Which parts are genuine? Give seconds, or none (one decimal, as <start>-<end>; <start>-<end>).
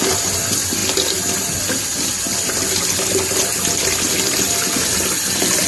0.0-5.7